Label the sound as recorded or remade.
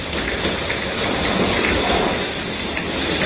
recorded